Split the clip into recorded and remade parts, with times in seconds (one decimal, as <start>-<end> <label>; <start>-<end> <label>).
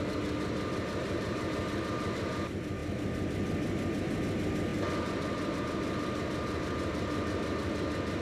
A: 0.0-1.0 recorded; 1.0-1.6 remade; 1.6-8.2 recorded